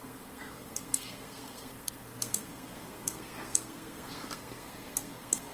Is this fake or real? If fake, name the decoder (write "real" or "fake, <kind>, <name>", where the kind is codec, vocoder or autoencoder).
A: fake, codec, SNAC